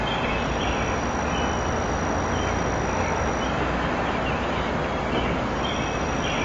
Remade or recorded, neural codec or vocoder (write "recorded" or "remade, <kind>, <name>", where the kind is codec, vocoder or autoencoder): recorded